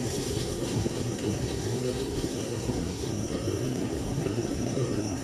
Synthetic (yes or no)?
yes